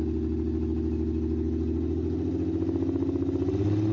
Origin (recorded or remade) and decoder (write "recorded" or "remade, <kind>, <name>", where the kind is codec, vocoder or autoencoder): recorded